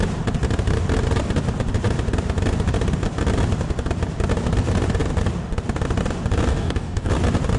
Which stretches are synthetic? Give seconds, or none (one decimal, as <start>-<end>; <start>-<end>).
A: 6.5-7.1